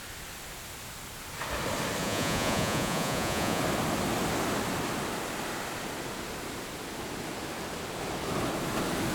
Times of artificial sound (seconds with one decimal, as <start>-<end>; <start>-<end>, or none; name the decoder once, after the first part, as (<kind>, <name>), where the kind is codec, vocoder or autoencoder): 2.0-3.6 (vocoder, Vocos)